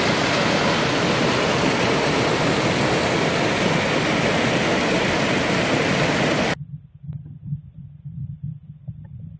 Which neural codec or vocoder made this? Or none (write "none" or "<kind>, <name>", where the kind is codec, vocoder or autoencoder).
none